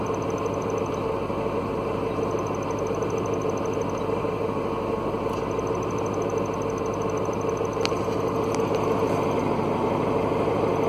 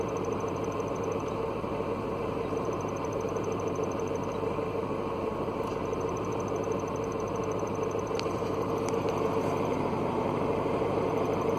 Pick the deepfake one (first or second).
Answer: second